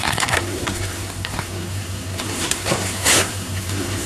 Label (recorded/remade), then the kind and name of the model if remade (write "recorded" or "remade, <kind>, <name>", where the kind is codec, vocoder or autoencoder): remade, codec, SNAC